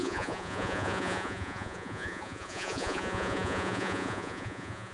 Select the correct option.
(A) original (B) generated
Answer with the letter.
B